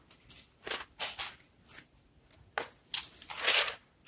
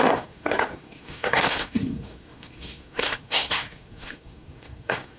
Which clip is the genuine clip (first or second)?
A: first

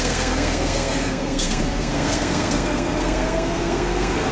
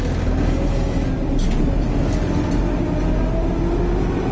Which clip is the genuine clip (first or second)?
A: second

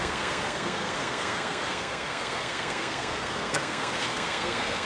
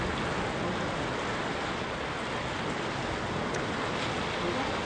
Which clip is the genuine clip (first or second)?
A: second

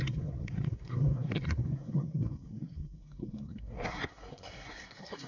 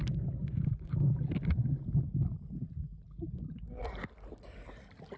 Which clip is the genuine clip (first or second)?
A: second